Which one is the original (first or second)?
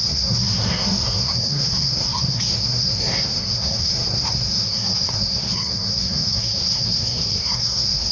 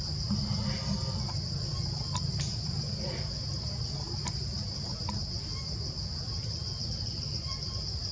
second